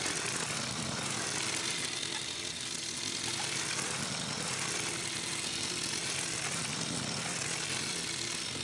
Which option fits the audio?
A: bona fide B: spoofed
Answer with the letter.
A